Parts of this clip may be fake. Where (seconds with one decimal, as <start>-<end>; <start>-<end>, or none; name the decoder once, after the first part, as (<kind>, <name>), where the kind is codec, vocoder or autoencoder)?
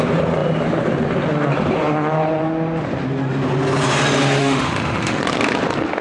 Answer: 4.4-5.2 (autoencoder, DAC-VAE)